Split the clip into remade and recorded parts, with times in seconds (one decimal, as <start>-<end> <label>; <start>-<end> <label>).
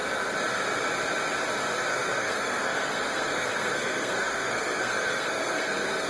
0.0-1.9 recorded; 1.9-6.1 remade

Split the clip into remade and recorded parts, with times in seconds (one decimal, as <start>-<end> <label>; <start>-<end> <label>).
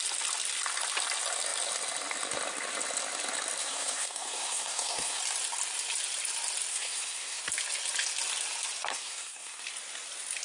0.0-3.6 recorded; 3.6-5.2 remade; 5.2-6.7 recorded; 6.7-7.4 remade; 7.4-8.9 recorded; 8.9-9.6 remade; 9.6-10.4 recorded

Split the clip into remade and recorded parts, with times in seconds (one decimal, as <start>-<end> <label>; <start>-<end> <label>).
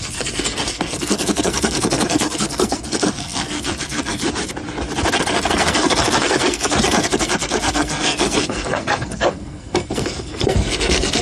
0.0-4.2 remade; 4.2-5.2 recorded; 5.2-11.2 remade